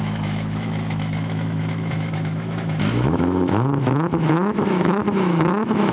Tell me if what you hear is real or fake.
fake